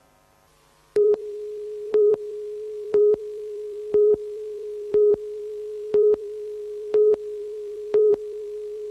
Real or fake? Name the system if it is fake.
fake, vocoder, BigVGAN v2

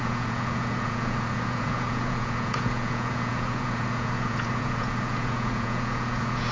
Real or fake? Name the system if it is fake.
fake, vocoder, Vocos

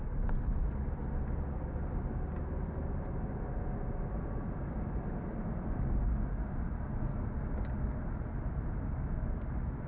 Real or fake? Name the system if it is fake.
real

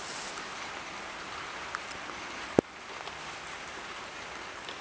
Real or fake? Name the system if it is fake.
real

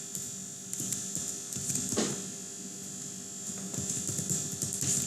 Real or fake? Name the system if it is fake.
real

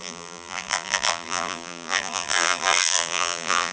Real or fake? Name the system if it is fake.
fake, vocoder, BigVGAN v2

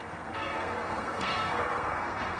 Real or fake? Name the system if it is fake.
fake, codec, SNAC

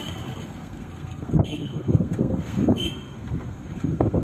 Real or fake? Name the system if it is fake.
fake, codec, SNAC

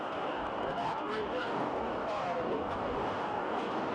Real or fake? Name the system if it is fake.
fake, codec, DAC